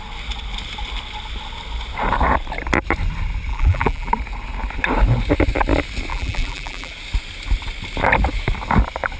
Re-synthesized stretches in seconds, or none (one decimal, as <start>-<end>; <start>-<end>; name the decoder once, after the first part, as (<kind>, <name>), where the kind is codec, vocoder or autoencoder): 3.5-4.1 (vocoder, BigVGAN v2); 6.1-6.9